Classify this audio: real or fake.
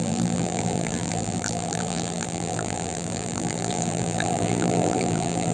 fake